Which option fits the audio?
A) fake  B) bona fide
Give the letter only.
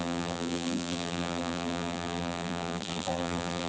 A